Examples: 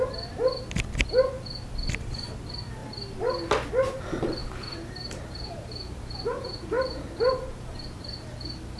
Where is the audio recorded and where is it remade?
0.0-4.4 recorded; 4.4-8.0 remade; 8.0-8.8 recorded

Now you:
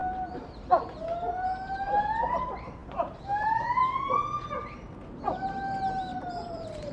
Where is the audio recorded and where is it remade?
0.0-6.1 recorded; 6.1-6.9 remade

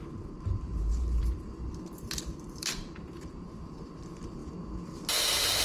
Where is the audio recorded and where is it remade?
0.0-4.4 remade; 4.4-5.6 recorded

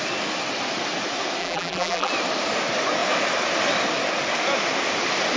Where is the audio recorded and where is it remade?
0.0-1.4 recorded; 1.4-2.1 remade; 2.1-5.4 recorded

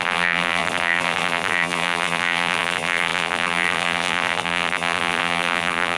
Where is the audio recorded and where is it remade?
0.0-6.0 remade